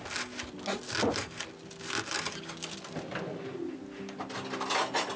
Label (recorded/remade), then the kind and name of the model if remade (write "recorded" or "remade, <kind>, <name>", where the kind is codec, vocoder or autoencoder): recorded